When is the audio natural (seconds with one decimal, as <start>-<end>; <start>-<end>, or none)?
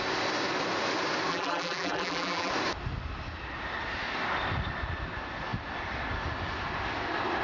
0.0-1.3; 2.5-7.4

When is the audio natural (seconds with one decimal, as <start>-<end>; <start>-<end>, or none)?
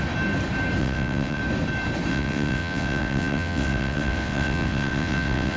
0.0-0.8; 1.4-2.1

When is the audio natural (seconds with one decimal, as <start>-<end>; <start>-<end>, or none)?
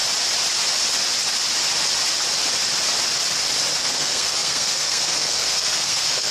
0.0-3.8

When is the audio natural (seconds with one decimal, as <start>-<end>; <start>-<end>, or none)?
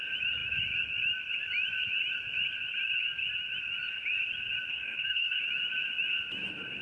0.0-4.7; 5.4-6.8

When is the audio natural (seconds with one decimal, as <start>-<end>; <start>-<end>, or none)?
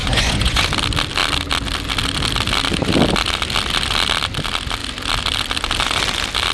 0.6-6.5